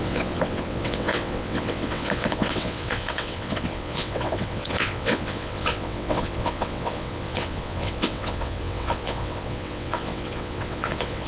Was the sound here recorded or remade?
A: remade